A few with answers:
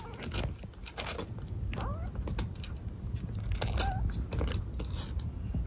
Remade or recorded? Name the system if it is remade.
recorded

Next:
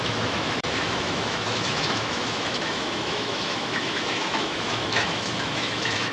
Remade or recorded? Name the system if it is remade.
remade, autoencoder, DAC-VAE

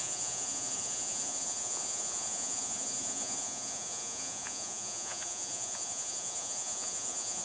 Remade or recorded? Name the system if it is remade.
remade, vocoder, Vocos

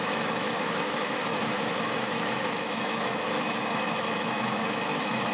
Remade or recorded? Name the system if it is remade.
remade, autoencoder, DAC-VAE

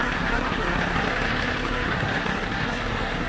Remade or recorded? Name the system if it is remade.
remade, codec, SNAC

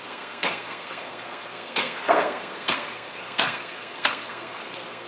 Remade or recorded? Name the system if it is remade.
remade, codec, SNAC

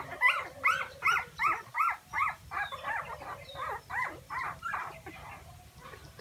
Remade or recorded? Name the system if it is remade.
remade, vocoder, BigVGAN v2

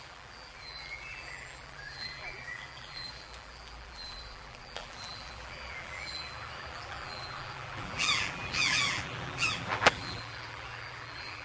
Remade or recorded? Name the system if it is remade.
remade, vocoder, BigVGAN v2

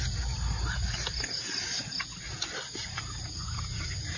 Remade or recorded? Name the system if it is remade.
recorded